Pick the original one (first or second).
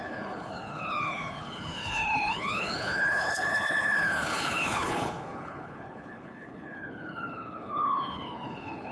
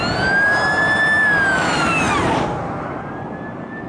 second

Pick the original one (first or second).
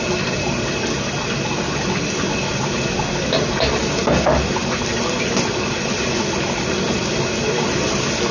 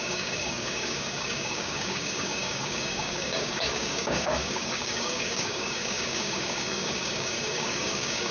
first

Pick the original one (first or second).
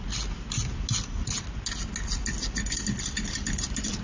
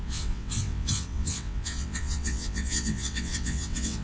first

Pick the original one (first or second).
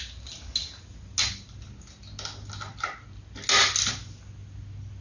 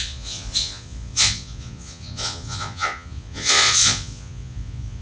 first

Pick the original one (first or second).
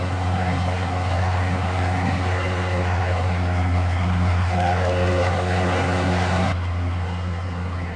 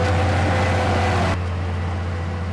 second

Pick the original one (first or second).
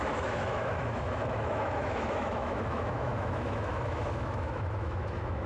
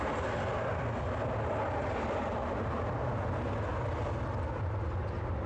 second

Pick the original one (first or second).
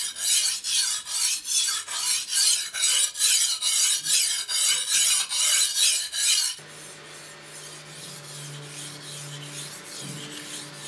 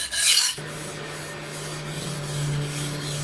first